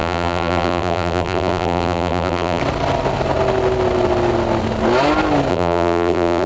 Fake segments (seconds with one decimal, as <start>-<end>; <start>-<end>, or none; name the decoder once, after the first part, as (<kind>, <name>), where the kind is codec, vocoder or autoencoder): 0.0-2.6 (vocoder, BigVGAN v2); 5.5-6.5